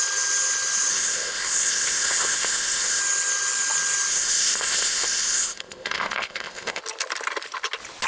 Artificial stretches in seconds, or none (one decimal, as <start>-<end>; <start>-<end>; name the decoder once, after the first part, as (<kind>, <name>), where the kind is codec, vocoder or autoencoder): 0.9-3.0 (codec, ZipCodec); 4.1-6.8